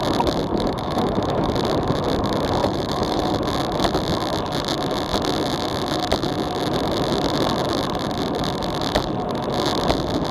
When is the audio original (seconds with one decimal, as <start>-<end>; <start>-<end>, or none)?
0.0-0.5; 1.5-2.6; 3.3-10.3